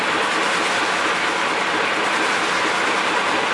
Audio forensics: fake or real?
real